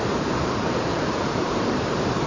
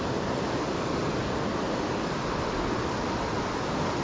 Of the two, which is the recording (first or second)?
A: second